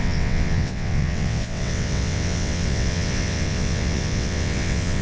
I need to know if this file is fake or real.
fake